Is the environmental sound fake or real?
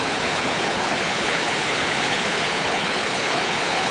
fake